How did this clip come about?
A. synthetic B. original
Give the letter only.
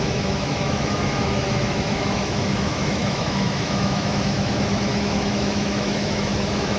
A